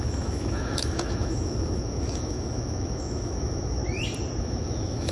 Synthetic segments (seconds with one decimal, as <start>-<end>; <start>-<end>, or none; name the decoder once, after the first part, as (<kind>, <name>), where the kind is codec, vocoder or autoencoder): 0.0-3.8 (autoencoder, DAC-VAE); 4.4-5.1